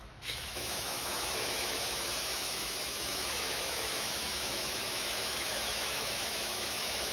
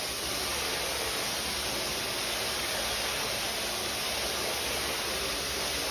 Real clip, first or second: second